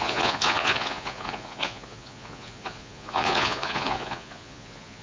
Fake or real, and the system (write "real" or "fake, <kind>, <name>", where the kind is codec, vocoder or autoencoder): fake, vocoder, Vocos